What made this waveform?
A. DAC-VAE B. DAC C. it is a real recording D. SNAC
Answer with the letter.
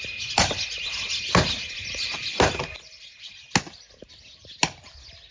C